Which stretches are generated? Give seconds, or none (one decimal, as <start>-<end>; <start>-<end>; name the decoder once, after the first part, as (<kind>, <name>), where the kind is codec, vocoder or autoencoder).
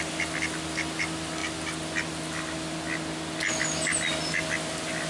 none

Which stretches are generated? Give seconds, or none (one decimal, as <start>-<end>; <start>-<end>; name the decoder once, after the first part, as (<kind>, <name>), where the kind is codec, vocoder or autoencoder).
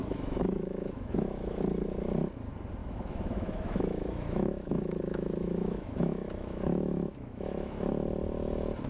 0.0-1.6 (autoencoder, DAC-VAE); 2.8-7.9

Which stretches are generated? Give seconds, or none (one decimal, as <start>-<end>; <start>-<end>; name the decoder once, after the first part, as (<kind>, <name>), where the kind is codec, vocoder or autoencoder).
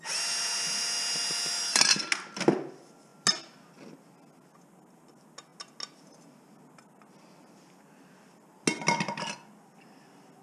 none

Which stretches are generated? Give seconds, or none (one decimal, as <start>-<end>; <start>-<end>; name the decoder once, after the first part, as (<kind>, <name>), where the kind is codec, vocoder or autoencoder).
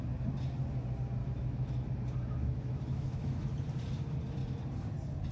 1.2-1.9 (autoencoder, DAC-VAE); 2.4-3.5